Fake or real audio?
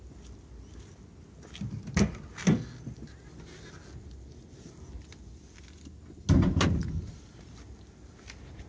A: real